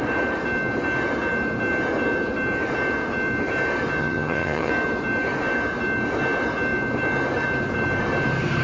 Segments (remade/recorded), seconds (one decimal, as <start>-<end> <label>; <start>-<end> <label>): 0.0-4.0 recorded; 4.0-4.7 remade; 4.7-8.6 recorded